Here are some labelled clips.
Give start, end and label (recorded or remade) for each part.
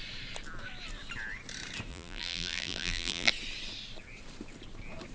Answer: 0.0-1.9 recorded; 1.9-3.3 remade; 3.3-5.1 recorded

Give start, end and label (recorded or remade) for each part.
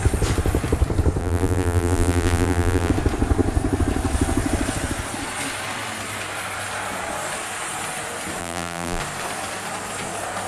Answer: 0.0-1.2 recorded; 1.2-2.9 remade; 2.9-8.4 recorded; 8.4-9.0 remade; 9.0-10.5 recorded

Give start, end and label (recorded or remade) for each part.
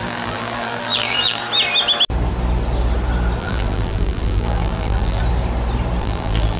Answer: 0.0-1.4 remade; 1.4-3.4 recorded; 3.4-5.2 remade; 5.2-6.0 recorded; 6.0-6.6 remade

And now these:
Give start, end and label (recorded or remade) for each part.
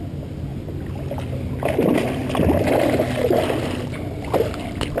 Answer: 0.0-0.5 recorded; 0.5-2.3 remade; 2.3-5.0 recorded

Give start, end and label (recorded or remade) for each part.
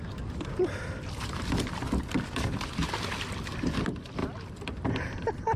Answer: 0.0-5.6 recorded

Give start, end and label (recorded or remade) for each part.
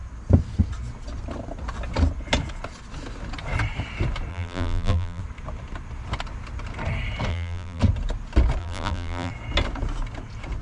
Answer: 0.0-4.3 recorded; 4.3-5.2 remade; 5.2-7.3 recorded; 7.3-7.8 remade; 7.8-8.6 recorded; 8.6-9.3 remade; 9.3-10.6 recorded